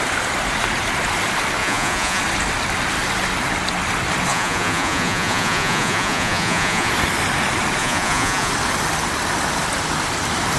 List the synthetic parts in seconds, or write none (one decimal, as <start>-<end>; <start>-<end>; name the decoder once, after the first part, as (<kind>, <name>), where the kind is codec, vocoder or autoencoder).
1.6-2.2 (vocoder, Vocos); 4.3-6.9; 7.8-8.5